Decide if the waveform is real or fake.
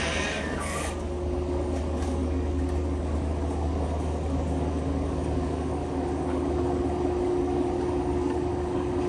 fake